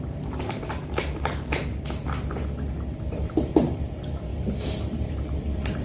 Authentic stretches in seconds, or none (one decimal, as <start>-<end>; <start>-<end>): 0.9-3.0; 4.3-5.1